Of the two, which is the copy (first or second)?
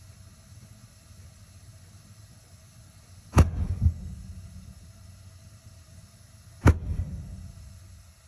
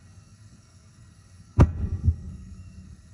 second